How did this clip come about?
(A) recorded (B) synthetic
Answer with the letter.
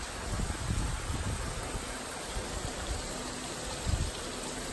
A